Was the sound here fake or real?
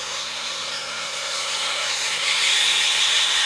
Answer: fake